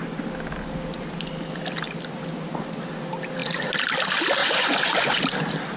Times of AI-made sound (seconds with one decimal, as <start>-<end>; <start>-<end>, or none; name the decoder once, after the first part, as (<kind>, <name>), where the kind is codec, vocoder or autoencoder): 4.4-5.2 (vocoder, Vocos)